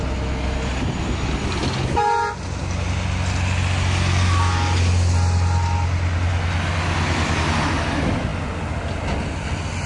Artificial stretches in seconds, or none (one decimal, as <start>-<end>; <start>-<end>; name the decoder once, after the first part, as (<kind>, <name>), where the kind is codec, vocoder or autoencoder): none